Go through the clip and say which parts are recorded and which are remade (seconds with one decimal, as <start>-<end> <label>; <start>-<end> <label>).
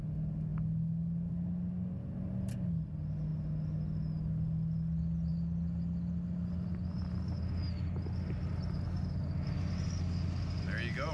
0.0-11.1 recorded